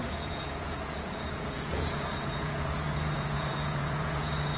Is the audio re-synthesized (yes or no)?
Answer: yes